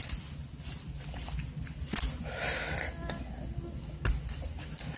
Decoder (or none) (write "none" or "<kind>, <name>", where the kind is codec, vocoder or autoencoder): none